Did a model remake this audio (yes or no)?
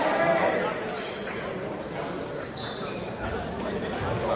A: no